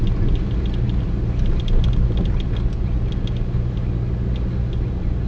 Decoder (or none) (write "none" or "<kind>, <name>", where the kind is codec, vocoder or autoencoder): none